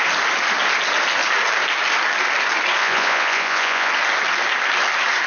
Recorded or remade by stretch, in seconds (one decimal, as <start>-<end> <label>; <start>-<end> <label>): 0.0-2.8 recorded; 2.8-3.9 remade; 3.9-5.3 recorded